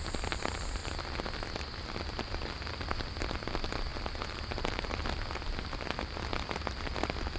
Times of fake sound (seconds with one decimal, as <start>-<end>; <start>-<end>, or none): none